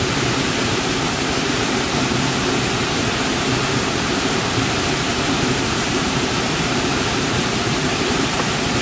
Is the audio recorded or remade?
remade